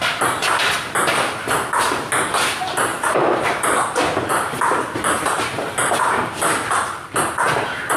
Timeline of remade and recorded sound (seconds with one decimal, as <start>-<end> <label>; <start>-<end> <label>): 0.0-2.9 recorded; 2.9-3.8 remade; 3.8-8.0 recorded